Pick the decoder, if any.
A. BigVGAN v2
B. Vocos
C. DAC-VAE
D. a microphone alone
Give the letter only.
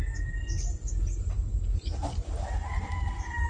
D